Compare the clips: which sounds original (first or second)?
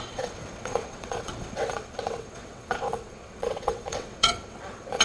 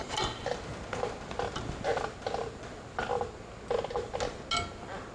second